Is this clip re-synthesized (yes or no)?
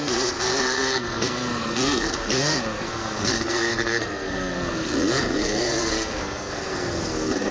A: yes